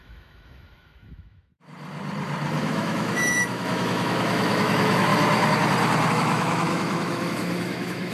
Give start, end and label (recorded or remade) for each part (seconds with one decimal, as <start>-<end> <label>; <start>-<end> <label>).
0.0-1.5 remade; 1.5-2.6 recorded; 2.6-5.1 remade; 5.1-6.1 recorded; 6.1-8.1 remade